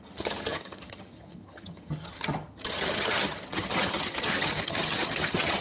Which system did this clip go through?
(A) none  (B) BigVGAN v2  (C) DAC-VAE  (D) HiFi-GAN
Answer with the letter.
D